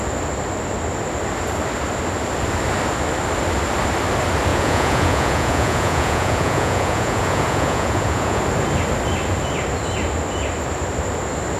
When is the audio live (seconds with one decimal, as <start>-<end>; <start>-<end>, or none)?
0.0-4.5; 8.4-11.6